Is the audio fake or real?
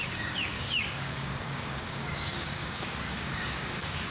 fake